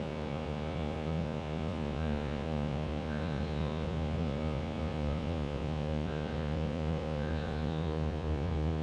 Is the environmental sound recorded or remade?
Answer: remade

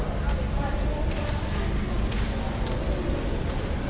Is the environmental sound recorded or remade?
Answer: recorded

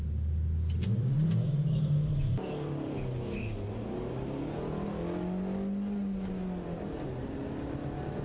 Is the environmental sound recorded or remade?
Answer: recorded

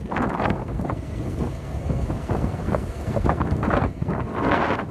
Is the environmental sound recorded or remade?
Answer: remade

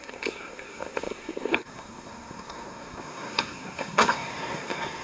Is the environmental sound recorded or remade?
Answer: remade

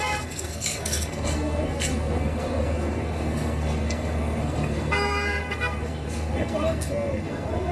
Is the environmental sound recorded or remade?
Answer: remade